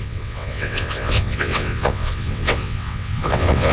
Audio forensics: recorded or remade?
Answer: remade